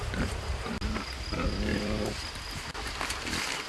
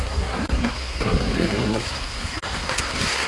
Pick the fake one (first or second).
second